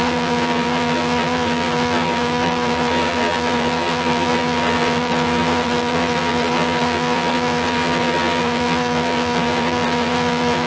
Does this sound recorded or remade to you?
remade